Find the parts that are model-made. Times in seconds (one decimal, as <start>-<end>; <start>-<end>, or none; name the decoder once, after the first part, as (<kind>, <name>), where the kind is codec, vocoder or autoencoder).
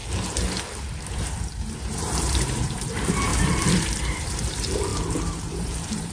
1.2-6.1 (vocoder, BigVGAN v2)